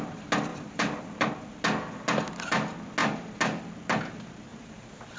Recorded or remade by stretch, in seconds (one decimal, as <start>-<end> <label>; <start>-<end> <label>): 0.0-0.5 recorded; 0.5-1.3 remade; 1.3-4.5 recorded; 4.5-5.2 remade